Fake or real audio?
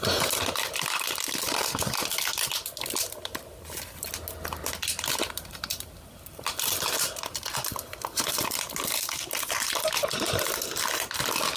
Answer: real